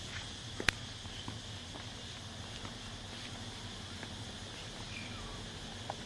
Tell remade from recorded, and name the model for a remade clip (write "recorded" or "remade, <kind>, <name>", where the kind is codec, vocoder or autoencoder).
recorded